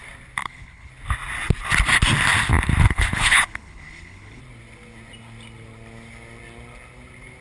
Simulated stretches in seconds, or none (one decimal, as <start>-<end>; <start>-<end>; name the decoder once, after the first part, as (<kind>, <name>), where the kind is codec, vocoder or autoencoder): 0.4-0.9 (codec, HILCodec); 2.8-4.4